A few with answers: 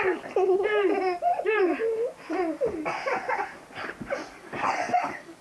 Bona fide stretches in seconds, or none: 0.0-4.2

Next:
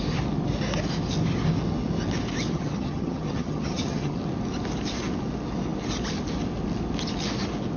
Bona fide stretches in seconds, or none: 0.0-2.5; 4.2-7.8